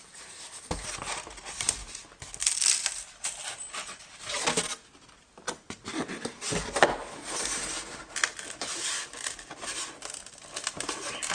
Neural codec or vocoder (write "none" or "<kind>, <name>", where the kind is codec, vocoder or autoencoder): none